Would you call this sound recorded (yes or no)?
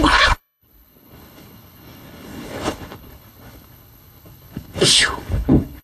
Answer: no